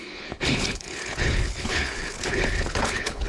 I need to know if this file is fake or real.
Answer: fake